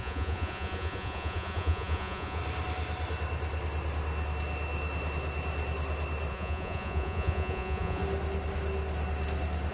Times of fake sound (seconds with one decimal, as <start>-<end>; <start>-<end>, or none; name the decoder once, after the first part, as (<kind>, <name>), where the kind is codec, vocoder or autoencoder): 0.0-2.4 (vocoder, Vocos); 6.3-8.0